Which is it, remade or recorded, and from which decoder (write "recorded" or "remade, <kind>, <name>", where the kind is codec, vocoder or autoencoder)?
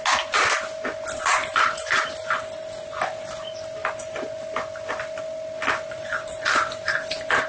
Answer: recorded